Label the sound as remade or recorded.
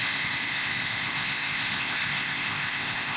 remade